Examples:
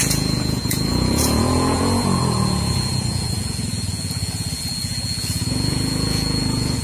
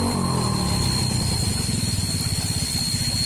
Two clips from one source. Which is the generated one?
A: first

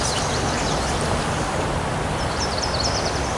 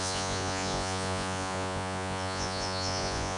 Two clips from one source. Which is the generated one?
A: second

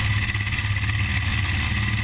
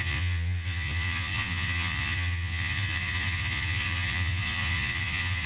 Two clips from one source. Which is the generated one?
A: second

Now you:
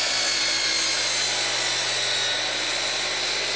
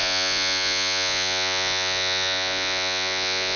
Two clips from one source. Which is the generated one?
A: second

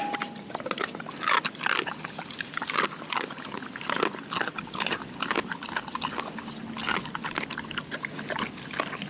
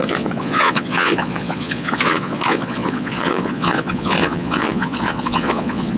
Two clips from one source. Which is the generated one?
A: second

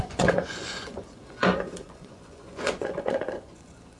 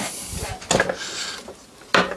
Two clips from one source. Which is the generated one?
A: first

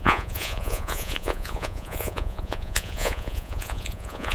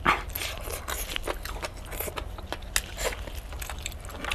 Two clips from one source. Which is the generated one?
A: first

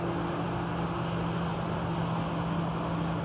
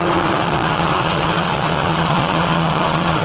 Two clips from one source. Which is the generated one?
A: second